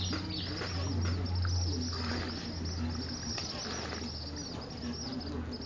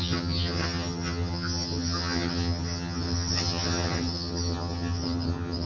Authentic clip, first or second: first